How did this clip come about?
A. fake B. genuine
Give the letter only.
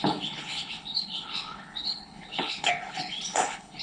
A